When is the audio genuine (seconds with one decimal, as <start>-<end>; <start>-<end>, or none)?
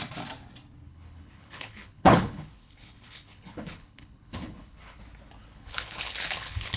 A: 0.0-0.9; 5.0-5.4